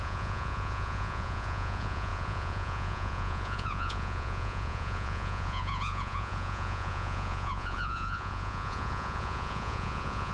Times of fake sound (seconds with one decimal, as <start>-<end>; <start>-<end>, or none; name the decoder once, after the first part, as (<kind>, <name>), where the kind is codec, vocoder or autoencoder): 0.0-10.3 (vocoder, Vocos)